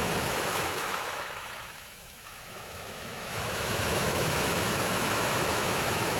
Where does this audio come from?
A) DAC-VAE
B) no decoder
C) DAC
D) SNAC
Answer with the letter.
A